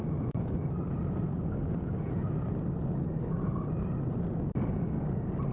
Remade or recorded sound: recorded